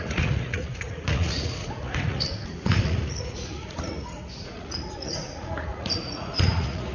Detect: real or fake fake